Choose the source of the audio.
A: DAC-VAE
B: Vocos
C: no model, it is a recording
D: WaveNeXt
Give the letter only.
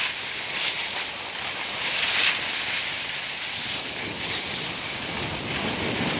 C